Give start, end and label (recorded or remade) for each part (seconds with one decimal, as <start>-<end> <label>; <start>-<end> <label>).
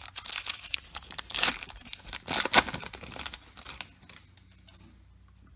0.0-0.5 recorded; 0.5-1.1 remade; 1.1-5.6 recorded